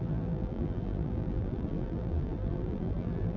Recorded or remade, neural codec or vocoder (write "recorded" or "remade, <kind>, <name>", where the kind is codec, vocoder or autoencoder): remade, vocoder, BigVGAN v2